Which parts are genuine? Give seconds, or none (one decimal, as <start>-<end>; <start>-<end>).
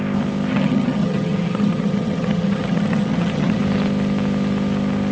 0.0-0.5; 3.6-5.1